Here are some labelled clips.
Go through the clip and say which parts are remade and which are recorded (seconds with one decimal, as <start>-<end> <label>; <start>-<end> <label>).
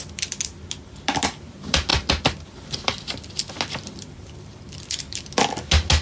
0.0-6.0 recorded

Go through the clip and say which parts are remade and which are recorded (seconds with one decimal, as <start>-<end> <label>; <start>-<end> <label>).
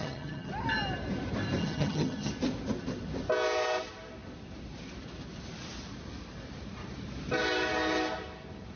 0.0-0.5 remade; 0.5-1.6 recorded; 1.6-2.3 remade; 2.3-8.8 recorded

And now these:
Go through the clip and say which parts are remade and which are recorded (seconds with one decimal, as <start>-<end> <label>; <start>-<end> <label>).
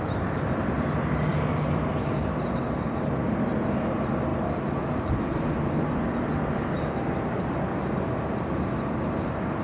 0.0-9.6 recorded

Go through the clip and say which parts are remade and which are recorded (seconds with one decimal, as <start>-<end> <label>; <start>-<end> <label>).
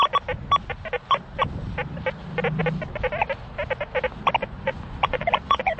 0.0-4.4 recorded; 4.4-5.8 remade